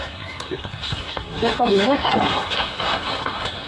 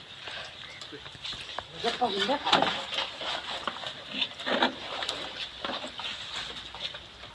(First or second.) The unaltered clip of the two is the second